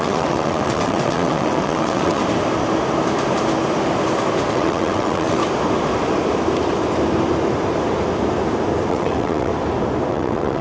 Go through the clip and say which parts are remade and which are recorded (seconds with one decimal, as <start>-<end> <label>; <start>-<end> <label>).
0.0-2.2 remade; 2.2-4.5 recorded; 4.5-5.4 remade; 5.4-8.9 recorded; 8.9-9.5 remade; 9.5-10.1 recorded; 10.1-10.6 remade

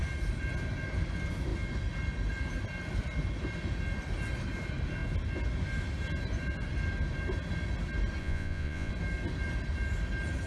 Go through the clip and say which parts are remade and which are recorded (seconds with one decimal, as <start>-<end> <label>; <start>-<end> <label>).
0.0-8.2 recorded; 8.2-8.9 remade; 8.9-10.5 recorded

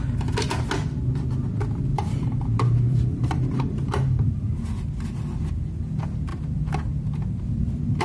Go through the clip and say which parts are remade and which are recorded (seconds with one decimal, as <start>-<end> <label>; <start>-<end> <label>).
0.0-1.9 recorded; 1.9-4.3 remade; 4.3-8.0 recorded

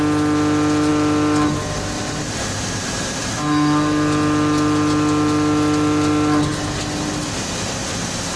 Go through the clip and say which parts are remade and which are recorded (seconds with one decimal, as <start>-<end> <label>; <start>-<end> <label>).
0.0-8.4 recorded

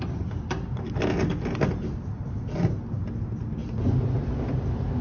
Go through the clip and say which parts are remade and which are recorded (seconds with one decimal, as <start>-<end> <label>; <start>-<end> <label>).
0.0-5.0 recorded